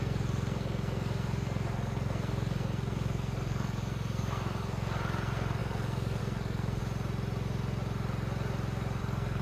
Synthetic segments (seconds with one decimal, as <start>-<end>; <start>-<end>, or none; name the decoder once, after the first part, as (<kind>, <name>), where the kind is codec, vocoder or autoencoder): 0.0-6.8 (codec, SNAC); 9.0-9.4